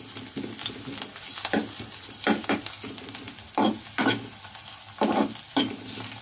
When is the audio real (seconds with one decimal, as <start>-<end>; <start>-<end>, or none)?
0.0-6.2